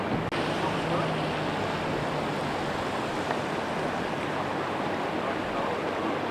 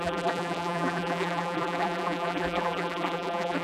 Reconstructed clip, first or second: second